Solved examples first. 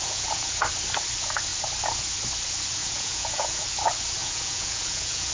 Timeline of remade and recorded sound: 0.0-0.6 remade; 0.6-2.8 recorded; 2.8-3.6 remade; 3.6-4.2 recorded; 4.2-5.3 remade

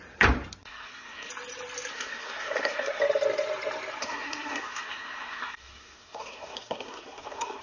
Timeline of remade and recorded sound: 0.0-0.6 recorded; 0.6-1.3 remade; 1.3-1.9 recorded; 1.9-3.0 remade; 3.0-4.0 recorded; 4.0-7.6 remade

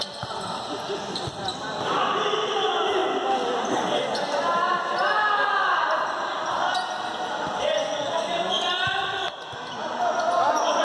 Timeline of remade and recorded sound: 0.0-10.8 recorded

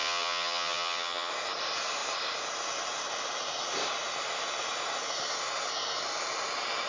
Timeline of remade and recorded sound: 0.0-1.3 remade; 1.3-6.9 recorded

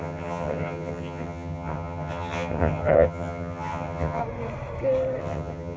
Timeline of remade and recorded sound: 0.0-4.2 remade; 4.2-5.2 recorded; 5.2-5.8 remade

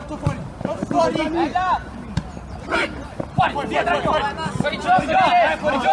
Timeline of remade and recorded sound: 0.0-3.4 remade; 3.4-5.9 recorded

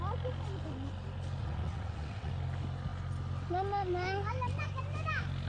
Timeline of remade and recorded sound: 0.0-1.4 recorded; 1.4-2.3 remade; 2.3-5.5 recorded

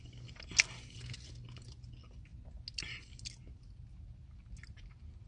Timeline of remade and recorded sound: 0.0-5.3 recorded